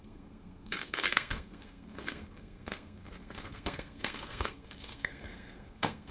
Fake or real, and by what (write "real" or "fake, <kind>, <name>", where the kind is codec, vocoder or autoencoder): fake, codec, SNAC